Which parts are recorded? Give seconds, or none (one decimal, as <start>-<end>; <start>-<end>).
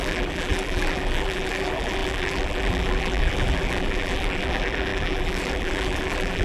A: none